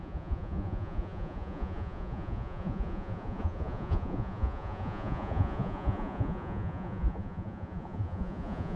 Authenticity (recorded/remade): remade